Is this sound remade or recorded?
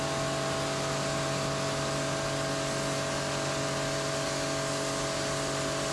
recorded